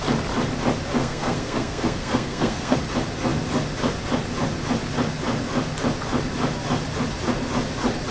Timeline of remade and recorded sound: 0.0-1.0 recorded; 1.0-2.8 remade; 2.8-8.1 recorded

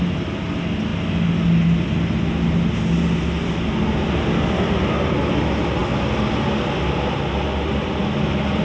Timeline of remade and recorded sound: 0.0-8.6 recorded

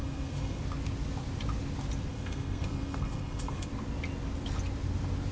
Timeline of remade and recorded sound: 0.0-0.6 remade; 0.6-2.1 recorded; 2.1-3.7 remade; 3.7-5.3 recorded

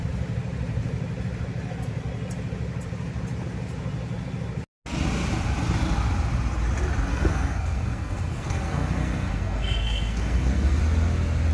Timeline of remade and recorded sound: 0.0-7.1 recorded; 7.1-10.8 remade; 10.8-11.5 recorded